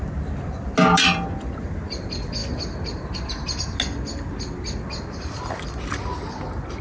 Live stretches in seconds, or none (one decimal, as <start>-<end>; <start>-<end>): 0.0-6.8